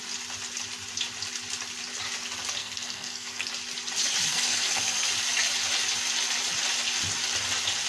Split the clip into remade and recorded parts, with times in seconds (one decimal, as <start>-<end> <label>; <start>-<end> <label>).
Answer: 0.0-2.6 recorded; 2.6-3.5 remade; 3.5-4.3 recorded; 4.3-5.1 remade; 5.1-7.9 recorded